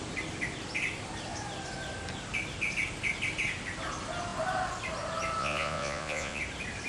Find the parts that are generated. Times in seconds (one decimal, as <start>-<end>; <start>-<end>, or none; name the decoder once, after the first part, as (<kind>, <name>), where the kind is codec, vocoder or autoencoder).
5.4-6.4 (vocoder, Vocos)